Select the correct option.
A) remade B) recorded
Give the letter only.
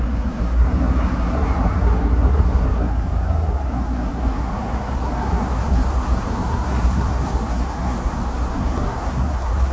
A